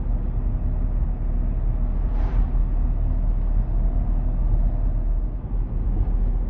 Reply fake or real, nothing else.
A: real